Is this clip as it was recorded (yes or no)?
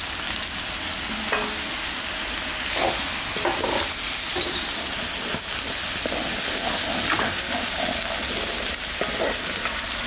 yes